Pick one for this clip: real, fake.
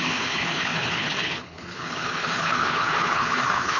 fake